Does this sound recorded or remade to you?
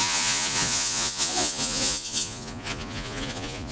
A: remade